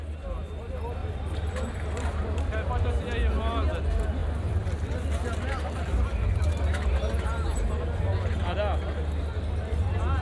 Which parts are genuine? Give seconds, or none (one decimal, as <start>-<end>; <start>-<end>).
0.0-1.0; 2.9-4.2; 6.5-10.2